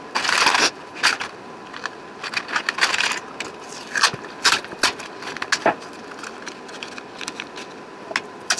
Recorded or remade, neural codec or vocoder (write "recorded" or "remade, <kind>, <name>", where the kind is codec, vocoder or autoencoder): recorded